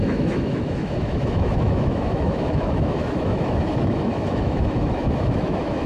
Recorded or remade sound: remade